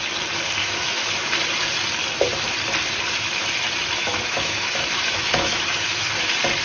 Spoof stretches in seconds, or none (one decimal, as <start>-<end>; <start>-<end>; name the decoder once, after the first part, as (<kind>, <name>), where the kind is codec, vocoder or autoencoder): 0.6-1.3 (autoencoder, DAC-VAE); 4.0-6.1